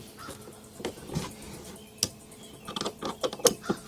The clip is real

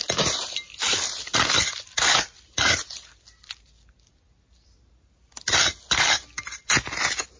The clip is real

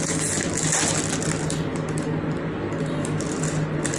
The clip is real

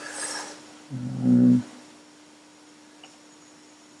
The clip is real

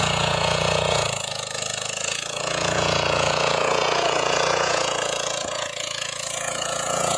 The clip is fake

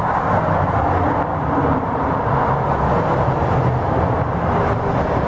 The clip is real